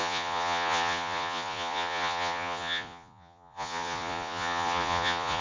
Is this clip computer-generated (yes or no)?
yes